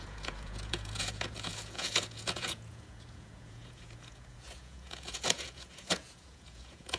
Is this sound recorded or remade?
remade